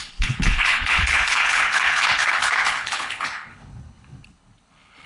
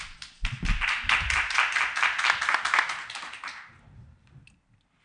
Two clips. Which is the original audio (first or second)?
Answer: second